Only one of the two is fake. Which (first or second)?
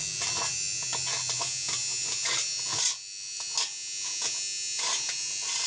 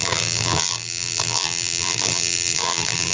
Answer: second